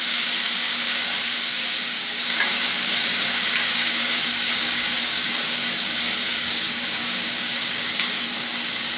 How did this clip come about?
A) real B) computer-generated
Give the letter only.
B